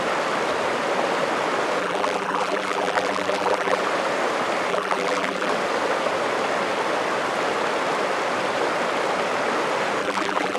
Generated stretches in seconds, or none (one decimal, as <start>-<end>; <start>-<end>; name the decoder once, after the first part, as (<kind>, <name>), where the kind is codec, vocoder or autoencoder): 1.8-3.8 (vocoder, BigVGAN v2); 4.7-5.5; 10.0-10.6